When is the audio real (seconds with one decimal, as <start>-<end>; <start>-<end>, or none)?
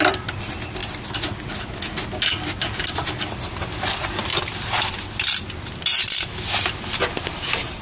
0.0-7.8